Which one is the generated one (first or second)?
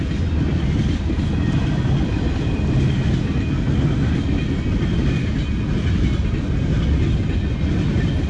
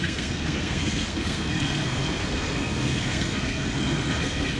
second